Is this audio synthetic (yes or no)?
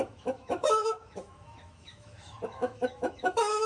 yes